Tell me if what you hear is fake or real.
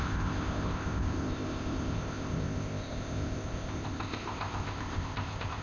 fake